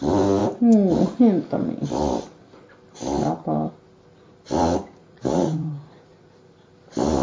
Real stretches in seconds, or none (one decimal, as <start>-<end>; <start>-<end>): 0.0-5.0; 6.3-7.2

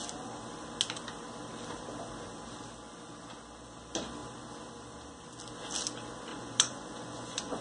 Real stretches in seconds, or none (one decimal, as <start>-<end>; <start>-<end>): 0.0-6.3

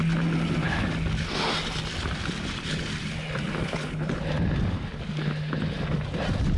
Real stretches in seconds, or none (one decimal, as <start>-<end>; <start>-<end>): 0.0-3.6; 4.2-6.6

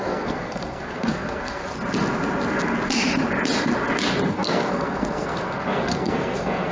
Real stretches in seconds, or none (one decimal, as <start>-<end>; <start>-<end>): 1.6-4.3

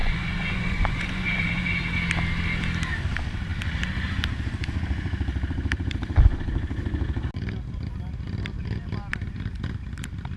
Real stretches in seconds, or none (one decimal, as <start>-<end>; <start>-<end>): 1.6-10.4

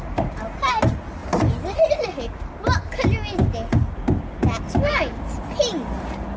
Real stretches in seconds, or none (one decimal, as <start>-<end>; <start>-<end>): 0.0-6.4

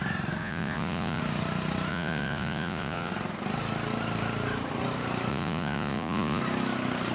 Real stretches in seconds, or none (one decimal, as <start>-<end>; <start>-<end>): 0.0-0.4; 1.2-1.9; 3.1-5.3; 6.4-7.1

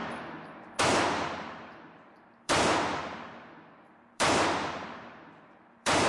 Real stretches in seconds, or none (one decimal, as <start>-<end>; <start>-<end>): 0.0-0.8; 3.0-3.7